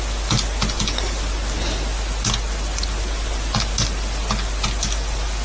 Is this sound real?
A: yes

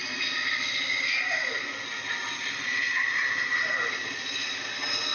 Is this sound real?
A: yes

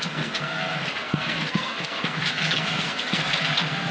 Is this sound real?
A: no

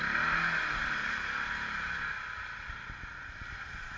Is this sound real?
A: yes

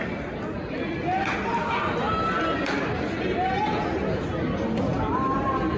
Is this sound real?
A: yes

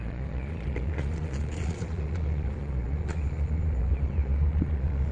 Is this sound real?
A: no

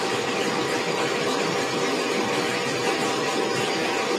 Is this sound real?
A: yes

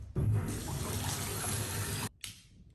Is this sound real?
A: yes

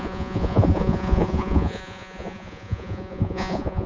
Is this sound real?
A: no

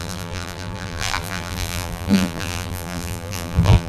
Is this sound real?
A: no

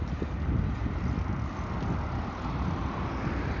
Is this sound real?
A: yes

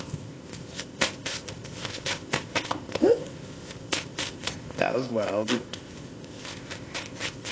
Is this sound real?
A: no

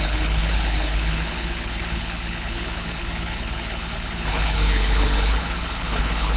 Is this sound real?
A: no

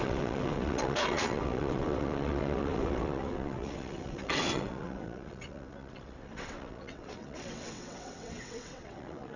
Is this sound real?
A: no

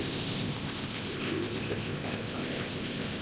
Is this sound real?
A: no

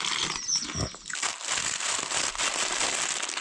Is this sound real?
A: yes